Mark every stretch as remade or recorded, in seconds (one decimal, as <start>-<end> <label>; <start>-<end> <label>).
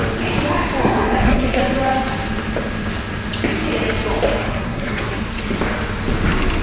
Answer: 0.0-0.8 recorded; 0.8-1.6 remade; 1.6-4.4 recorded; 4.4-5.2 remade; 5.2-6.6 recorded